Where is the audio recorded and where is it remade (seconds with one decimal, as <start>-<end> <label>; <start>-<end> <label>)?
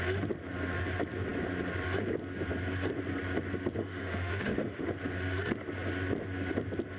0.0-3.8 recorded; 3.8-4.8 remade; 4.8-7.0 recorded